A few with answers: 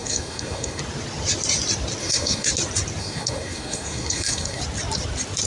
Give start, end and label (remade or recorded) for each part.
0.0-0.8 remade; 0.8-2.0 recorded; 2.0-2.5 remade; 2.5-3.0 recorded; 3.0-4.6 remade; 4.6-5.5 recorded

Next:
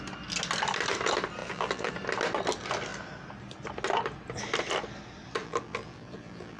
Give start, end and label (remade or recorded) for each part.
0.0-1.4 recorded; 1.4-1.9 remade; 1.9-5.4 recorded; 5.4-6.6 remade

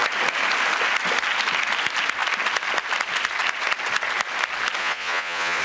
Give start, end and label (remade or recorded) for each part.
0.0-4.8 recorded; 4.8-5.6 remade

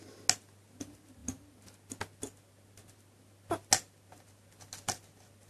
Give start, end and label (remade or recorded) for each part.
0.0-5.5 recorded

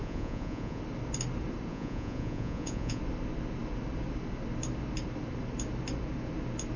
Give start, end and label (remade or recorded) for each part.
0.0-0.8 remade; 0.8-1.7 recorded; 1.7-3.0 remade; 3.0-6.8 recorded